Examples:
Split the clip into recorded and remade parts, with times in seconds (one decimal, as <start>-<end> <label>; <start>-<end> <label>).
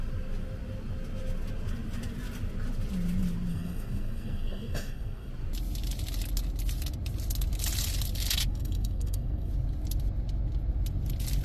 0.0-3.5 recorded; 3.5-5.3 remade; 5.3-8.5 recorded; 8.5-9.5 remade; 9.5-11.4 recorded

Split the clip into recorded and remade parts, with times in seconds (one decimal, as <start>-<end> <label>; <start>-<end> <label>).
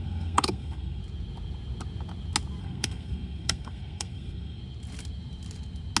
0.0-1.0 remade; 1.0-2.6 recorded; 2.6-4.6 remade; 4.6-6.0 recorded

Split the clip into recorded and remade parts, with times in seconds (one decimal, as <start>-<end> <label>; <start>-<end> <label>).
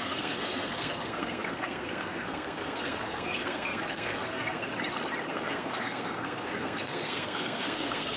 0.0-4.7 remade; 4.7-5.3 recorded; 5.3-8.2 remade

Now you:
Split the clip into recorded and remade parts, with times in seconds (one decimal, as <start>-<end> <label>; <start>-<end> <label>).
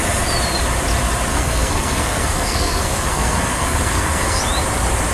0.0-1.3 recorded; 1.3-4.4 remade; 4.4-5.1 recorded